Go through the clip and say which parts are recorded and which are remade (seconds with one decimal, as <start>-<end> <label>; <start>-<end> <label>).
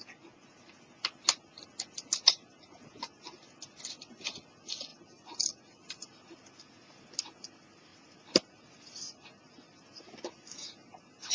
0.0-4.9 recorded; 4.9-6.7 remade; 6.7-7.9 recorded; 7.9-8.5 remade; 8.5-11.3 recorded